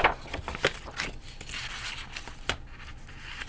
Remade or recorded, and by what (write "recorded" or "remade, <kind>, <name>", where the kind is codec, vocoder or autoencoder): recorded